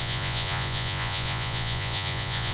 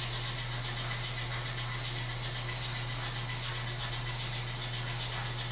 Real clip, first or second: second